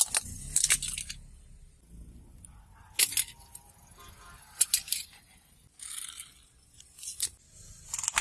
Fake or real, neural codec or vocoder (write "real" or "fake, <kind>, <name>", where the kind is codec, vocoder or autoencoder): real